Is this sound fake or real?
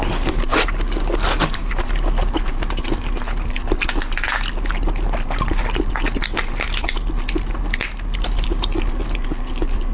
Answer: real